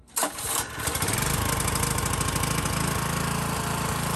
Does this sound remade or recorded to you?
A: recorded